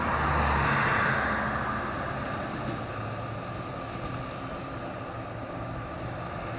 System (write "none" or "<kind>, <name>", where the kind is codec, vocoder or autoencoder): none